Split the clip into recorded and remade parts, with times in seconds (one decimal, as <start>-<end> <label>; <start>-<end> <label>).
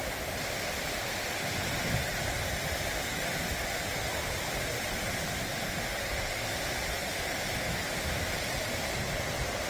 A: 0.0-9.7 recorded